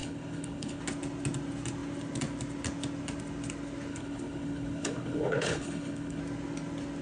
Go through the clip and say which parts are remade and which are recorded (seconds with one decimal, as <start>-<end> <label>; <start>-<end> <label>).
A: 0.0-0.8 remade; 0.8-3.9 recorded; 3.9-6.2 remade; 6.2-7.0 recorded